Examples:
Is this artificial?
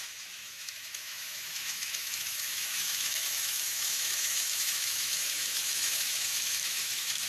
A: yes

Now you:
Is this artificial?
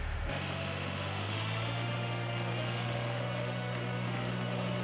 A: yes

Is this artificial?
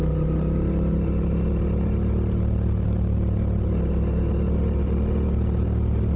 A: no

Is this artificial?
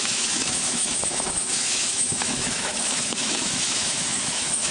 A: yes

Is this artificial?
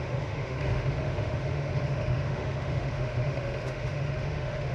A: yes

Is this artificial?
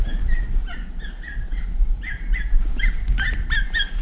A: no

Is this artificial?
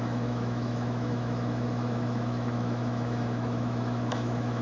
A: yes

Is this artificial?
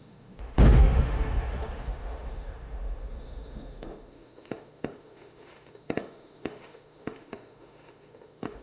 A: yes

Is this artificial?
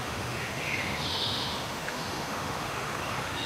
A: yes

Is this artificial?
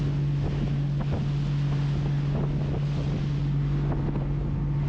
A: no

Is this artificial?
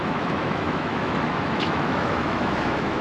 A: yes